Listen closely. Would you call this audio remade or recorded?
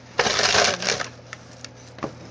recorded